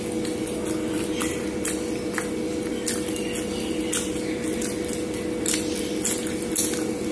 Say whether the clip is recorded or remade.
recorded